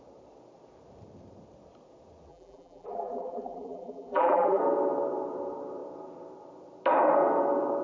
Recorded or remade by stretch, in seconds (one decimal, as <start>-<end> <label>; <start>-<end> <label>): 0.0-2.3 recorded; 2.3-4.6 remade; 4.6-7.8 recorded